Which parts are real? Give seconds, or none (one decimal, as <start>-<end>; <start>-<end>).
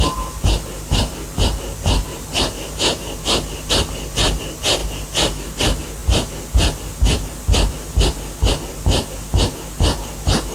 0.0-2.1; 3.7-10.5